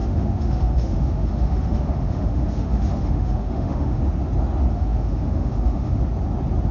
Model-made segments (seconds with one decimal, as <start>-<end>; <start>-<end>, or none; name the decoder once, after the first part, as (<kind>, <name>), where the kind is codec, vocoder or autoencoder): 0.0-4.0 (autoencoder, DAC-VAE); 4.7-6.0